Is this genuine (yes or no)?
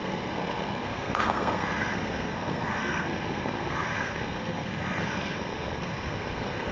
no